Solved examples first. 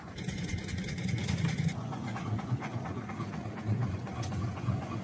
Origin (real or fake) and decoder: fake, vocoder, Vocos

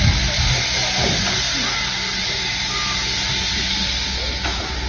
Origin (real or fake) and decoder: real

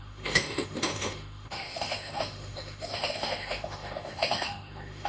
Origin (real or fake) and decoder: fake, autoencoder, DAC-VAE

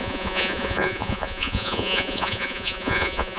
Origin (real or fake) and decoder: fake, vocoder, Vocos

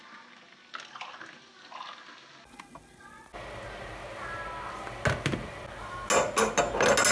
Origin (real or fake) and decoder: real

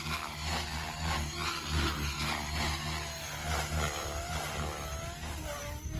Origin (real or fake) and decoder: real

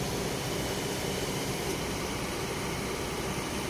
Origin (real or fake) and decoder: fake, vocoder, BigVGAN v2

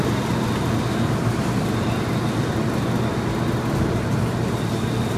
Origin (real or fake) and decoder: real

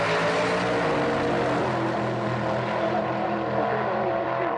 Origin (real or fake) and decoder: real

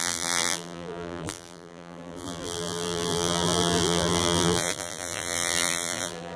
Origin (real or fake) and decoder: fake, vocoder, BigVGAN v2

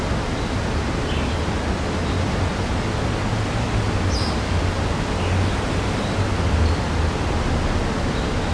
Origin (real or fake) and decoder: real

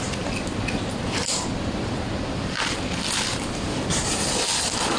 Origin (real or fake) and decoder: real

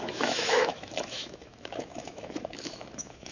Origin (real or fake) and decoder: fake, autoencoder, DAC-VAE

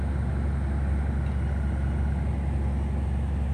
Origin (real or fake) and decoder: real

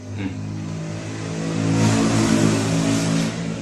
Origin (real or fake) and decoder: real